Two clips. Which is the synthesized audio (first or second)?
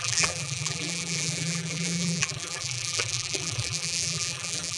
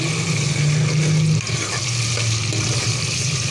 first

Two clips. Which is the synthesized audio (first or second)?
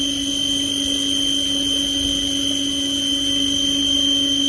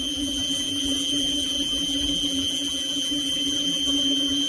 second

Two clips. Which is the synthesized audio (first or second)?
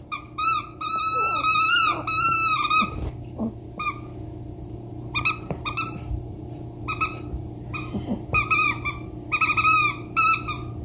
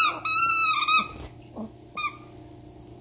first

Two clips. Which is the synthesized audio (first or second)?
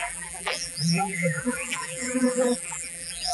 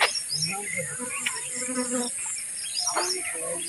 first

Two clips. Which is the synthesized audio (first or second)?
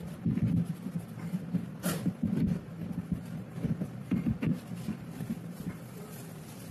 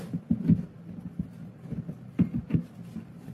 first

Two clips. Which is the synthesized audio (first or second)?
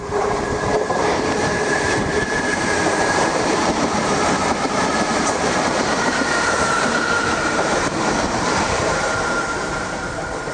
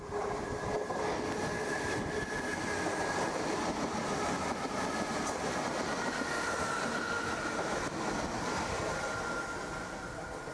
first